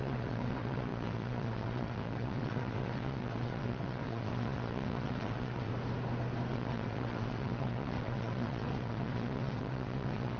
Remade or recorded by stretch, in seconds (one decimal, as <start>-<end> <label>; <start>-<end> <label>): 0.0-5.7 remade; 5.7-6.5 recorded; 6.5-10.4 remade